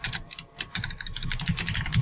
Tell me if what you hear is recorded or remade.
remade